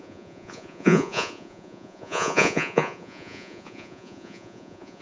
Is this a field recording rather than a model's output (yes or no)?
no